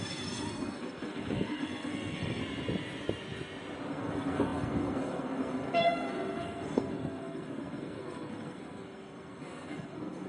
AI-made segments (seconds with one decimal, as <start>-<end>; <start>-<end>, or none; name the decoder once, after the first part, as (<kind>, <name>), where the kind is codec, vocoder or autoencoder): 0.0-2.4 (codec, SNAC); 3.9-10.3

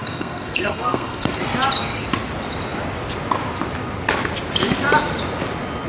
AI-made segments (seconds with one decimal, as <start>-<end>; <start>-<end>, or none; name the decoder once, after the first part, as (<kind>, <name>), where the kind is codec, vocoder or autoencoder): 0.0-1.4 (codec, SNAC)

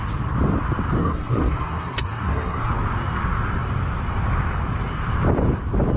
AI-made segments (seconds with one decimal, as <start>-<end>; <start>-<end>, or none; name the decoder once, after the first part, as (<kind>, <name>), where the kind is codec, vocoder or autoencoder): 1.0-2.7 (codec, SNAC)

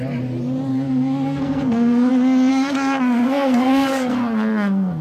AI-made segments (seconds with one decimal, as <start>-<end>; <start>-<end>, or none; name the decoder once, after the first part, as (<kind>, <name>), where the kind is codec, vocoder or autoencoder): 0.7-2.1 (codec, SNAC); 2.5-5.0

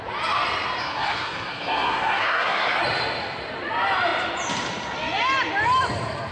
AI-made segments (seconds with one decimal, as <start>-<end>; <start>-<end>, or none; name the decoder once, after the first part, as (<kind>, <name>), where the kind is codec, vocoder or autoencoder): 0.8-2.8 (codec, SNAC)

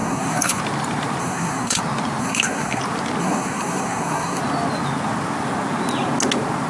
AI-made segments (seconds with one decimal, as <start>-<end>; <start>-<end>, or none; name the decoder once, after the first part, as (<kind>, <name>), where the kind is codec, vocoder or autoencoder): 0.0-0.6 (codec, SNAC); 1.2-1.8; 2.2-2.8; 3.2-4.4

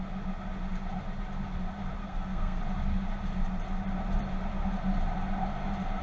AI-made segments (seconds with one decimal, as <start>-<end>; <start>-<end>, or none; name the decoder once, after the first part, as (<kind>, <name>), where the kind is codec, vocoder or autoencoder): 2.0-2.6 (codec, SNAC)

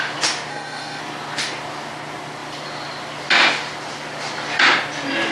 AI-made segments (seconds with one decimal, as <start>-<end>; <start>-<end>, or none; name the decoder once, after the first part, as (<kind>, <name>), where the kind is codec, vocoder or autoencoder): 0.5-1.0 (codec, SNAC)